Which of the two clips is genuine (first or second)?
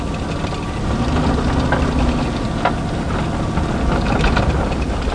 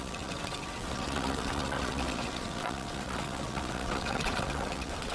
first